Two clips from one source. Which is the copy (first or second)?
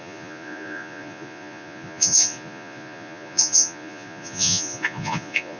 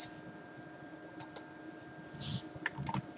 first